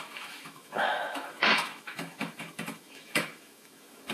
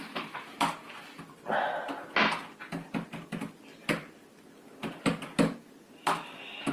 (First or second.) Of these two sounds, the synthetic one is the first